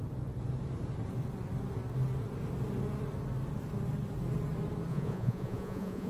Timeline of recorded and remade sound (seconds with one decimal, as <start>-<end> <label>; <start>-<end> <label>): 0.0-4.9 recorded; 4.9-6.1 remade